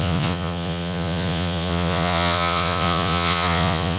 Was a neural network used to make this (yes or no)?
yes